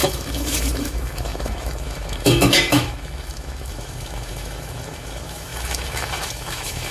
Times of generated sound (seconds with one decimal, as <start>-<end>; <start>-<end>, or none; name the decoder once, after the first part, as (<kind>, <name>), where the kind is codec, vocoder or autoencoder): 0.0-6.9 (autoencoder, DAC-VAE)